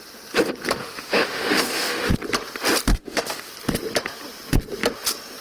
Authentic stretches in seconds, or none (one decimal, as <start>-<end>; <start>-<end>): 0.0-0.8; 2.1-2.9; 3.5-5.4